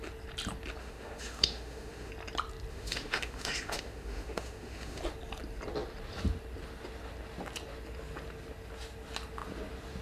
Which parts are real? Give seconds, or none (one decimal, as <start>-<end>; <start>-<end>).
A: 0.0-0.8; 2.1-2.7; 5.0-10.0